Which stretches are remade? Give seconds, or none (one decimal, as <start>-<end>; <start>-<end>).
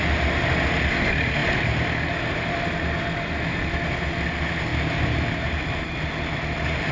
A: 4.7-5.9